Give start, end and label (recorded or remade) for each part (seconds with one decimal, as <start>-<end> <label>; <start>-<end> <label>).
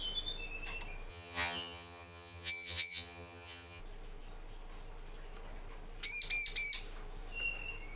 0.0-1.1 recorded; 1.1-3.8 remade; 3.8-8.0 recorded